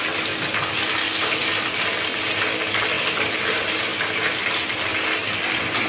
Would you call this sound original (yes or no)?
yes